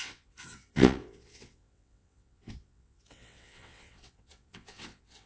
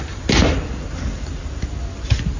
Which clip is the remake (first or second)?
first